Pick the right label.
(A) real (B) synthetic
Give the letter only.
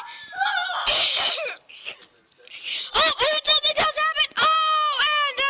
A